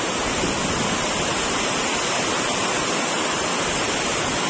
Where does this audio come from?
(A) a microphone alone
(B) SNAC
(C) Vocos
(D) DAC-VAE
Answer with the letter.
A